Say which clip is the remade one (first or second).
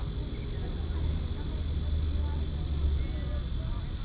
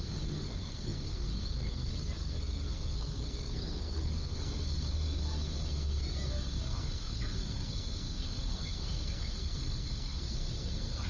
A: second